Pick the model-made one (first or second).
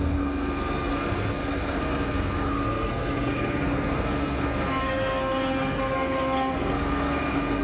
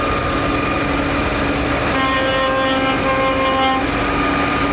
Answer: first